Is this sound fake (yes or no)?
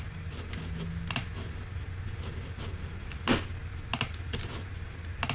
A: no